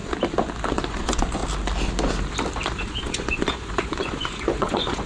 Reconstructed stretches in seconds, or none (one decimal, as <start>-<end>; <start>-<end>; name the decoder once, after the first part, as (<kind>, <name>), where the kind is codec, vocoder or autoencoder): 0.7-1.4 (vocoder, Vocos); 2.8-5.1